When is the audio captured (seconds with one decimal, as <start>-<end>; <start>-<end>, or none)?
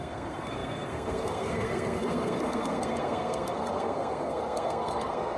none